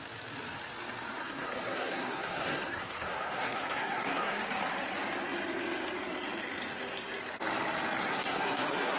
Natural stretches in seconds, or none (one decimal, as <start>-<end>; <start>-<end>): 0.0-1.2; 4.4-8.0